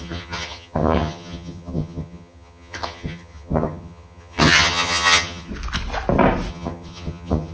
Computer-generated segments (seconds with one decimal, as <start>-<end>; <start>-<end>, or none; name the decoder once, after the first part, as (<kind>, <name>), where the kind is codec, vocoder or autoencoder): 0.0-5.5 (vocoder, HiFi-GAN); 6.5-7.5